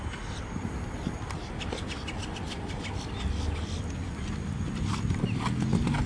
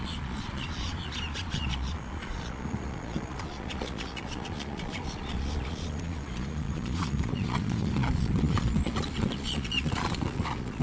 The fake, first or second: second